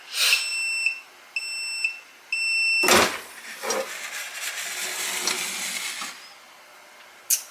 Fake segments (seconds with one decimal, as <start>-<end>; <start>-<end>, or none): none